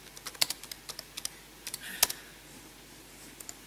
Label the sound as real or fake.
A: real